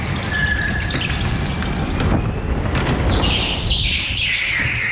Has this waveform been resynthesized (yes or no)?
no